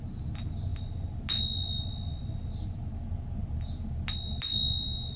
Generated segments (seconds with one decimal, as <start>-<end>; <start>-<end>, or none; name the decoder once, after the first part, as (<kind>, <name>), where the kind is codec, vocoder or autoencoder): none